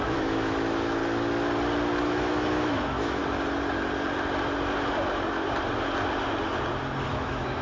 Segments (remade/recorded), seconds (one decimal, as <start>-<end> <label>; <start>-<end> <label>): 0.0-1.0 remade; 1.0-2.0 recorded; 2.0-3.2 remade; 3.2-7.1 recorded; 7.1-7.6 remade